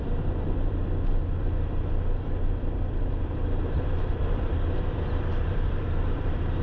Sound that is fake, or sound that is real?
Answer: fake